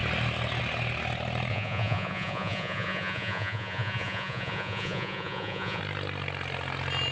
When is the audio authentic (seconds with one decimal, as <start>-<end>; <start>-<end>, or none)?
0.0-1.5; 5.8-7.1